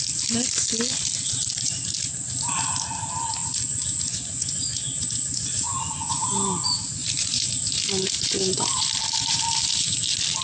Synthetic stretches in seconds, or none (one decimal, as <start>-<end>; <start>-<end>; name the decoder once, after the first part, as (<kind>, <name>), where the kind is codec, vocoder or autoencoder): 3.4-6.1 (vocoder, Vocos)